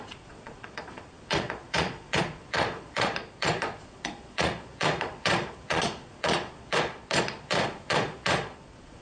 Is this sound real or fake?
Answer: fake